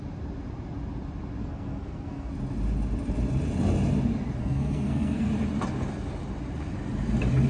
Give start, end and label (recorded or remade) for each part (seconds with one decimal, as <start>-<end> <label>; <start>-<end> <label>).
0.0-1.4 recorded; 1.4-2.3 remade; 2.3-4.4 recorded; 4.4-5.3 remade; 5.3-7.5 recorded

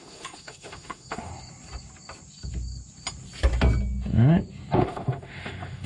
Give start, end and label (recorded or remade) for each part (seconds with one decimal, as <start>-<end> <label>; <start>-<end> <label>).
0.0-1.3 remade; 1.3-4.8 recorded; 4.8-5.9 remade

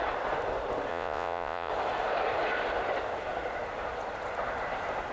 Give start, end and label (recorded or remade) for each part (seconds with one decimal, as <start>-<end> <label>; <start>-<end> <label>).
0.0-0.9 recorded; 0.9-1.7 remade; 1.7-5.1 recorded